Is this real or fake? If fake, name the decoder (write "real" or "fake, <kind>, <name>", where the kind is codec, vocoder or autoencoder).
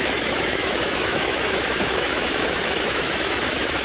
fake, autoencoder, DAC-VAE